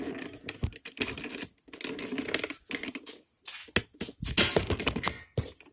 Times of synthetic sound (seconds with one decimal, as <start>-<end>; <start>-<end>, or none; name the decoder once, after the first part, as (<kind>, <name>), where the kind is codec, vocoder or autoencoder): none